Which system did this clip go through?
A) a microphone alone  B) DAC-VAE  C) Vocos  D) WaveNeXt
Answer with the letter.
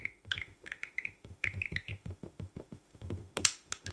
B